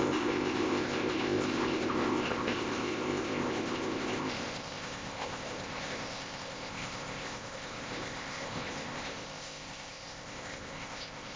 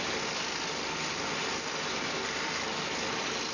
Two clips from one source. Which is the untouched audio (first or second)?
second